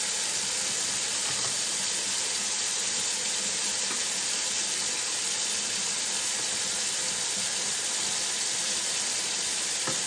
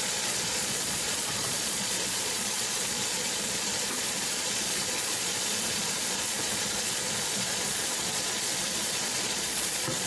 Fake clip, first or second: second